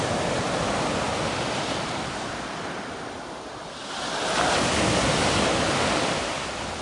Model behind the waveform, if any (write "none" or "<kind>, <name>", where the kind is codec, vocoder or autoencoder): none